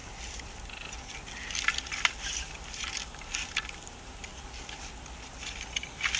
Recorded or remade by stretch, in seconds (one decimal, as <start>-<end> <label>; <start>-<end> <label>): 0.0-1.6 recorded; 1.6-4.3 remade; 4.3-5.4 recorded; 5.4-6.2 remade